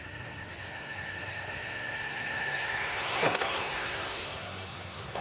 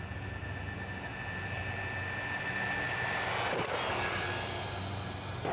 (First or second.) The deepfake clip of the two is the first